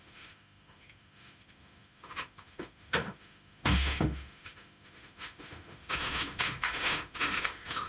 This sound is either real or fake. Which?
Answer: fake